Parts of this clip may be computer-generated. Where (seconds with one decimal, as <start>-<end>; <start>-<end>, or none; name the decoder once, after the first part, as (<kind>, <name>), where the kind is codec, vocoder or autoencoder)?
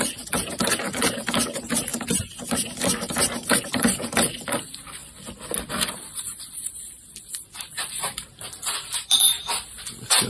0.0-5.0 (vocoder, BigVGAN v2); 5.7-10.3